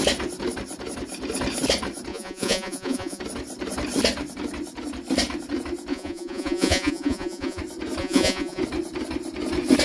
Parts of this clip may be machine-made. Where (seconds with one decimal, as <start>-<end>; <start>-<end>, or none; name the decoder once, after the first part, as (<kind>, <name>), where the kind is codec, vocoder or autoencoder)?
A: 2.1-3.2 (vocoder, Vocos); 5.9-7.6; 8.0-8.6